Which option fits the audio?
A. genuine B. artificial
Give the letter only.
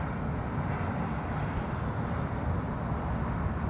A